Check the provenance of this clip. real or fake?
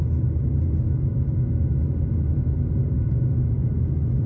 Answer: real